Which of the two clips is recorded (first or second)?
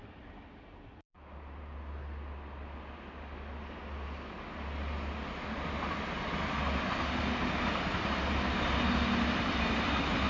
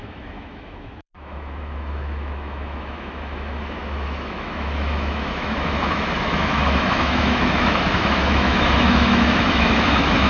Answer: first